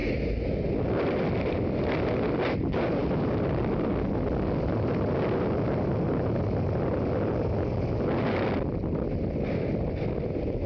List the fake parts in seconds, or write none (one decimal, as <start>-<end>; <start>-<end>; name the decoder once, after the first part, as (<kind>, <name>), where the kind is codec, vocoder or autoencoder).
none